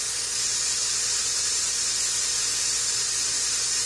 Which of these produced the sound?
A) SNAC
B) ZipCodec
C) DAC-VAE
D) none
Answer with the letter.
D